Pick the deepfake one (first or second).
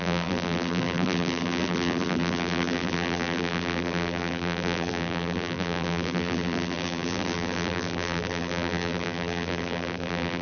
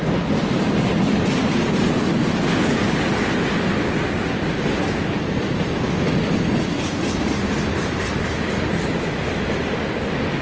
first